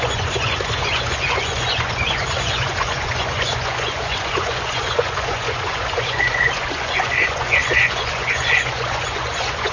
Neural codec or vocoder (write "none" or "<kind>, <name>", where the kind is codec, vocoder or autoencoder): vocoder, Vocos